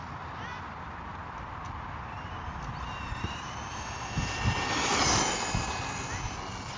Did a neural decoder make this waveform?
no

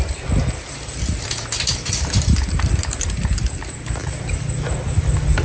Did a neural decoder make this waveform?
no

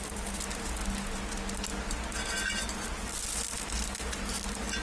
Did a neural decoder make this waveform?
no